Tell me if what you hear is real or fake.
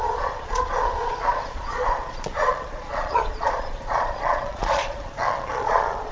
fake